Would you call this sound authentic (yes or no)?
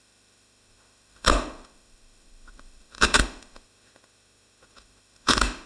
no